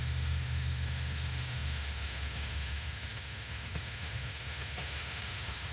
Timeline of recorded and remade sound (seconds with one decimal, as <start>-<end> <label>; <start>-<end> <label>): 0.0-5.7 remade